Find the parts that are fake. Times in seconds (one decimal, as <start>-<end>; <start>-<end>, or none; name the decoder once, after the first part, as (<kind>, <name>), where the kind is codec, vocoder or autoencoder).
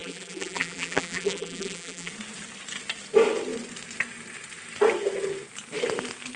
0.0-2.1 (vocoder, BigVGAN v2)